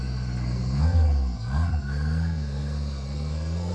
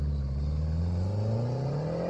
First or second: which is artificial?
first